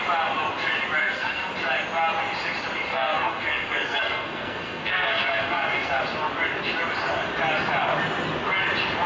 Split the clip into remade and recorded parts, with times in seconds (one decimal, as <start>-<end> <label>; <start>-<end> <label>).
0.0-1.0 recorded; 1.0-1.5 remade; 1.5-2.9 recorded; 2.9-6.0 remade; 6.0-9.1 recorded